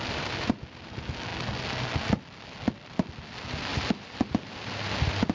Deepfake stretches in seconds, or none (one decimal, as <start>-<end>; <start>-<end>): none